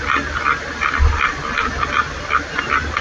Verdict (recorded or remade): recorded